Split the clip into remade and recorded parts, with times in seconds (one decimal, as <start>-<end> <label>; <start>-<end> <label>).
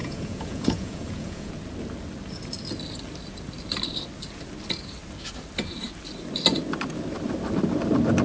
0.0-1.5 remade; 1.5-8.2 recorded